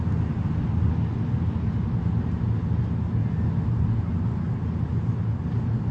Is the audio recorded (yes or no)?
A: yes